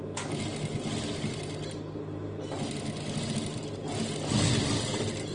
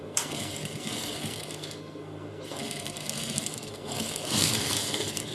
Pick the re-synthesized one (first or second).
second